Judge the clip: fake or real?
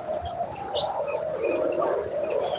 real